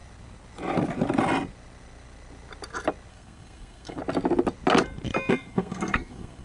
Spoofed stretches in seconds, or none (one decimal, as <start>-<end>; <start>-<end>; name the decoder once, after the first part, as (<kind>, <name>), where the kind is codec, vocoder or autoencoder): 3.1-4.0 (codec, SNAC); 5.3-6.4